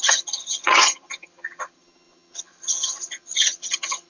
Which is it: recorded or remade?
remade